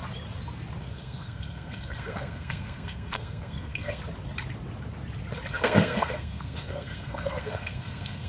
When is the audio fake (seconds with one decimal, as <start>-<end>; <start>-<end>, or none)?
0.8-4.0; 5.5-8.3